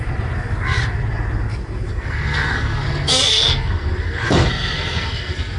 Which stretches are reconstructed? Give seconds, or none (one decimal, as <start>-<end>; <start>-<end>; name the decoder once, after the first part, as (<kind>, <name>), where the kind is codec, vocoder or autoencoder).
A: 1.9-5.6 (codec, SNAC)